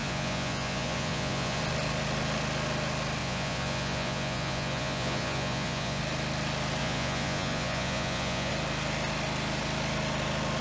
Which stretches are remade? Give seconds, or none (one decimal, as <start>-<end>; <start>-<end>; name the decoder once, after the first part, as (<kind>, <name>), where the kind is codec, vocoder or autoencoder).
0.0-1.6 (vocoder, Vocos); 3.2-6.0; 6.8-8.5